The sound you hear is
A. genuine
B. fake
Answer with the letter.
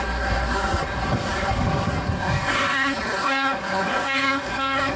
B